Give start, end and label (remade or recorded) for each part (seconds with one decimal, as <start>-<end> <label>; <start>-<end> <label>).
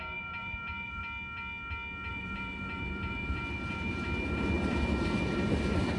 0.0-1.0 remade; 1.0-2.1 recorded; 2.1-6.0 remade